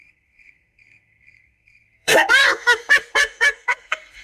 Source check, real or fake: fake